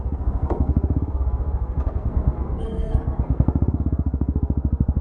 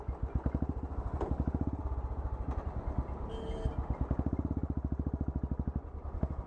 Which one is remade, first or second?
first